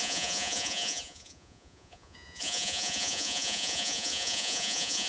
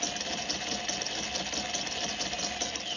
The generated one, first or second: first